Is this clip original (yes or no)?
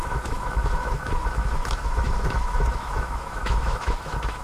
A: no